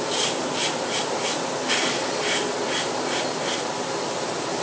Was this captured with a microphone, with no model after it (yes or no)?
yes